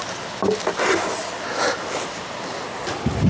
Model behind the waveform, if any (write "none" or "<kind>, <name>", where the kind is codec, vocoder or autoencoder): none